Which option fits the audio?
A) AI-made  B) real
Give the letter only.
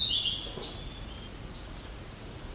A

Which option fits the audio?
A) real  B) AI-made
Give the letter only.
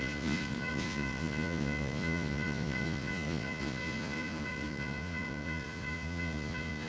B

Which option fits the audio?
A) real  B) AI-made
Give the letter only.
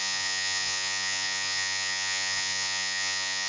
B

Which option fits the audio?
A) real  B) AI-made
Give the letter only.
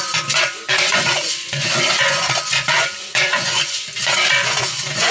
B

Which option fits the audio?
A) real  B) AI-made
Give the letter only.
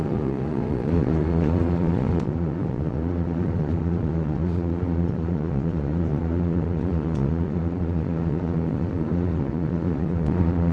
B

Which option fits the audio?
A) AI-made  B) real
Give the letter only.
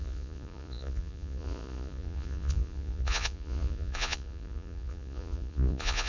A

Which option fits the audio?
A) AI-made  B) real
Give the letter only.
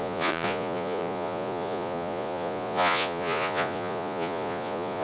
A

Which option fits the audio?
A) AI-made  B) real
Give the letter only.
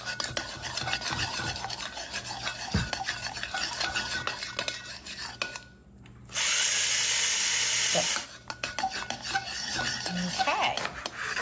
B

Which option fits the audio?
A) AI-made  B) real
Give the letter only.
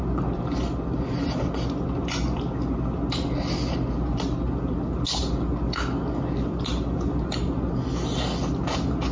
B